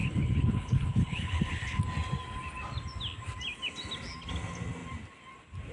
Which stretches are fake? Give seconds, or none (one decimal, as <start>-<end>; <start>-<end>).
0.0-1.8